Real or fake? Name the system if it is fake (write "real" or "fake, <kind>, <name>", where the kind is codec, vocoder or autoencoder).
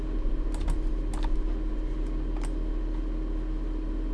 real